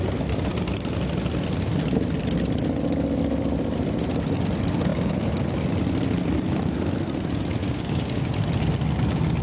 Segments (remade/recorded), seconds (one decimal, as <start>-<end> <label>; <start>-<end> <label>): 0.0-7.6 recorded; 7.6-8.3 remade; 8.3-9.4 recorded